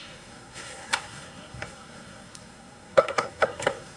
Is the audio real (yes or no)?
no